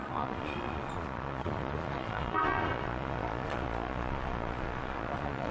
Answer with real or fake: fake